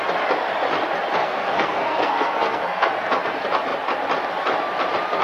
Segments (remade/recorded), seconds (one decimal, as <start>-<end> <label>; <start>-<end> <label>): 0.0-1.2 recorded; 1.2-2.9 remade; 2.9-5.2 recorded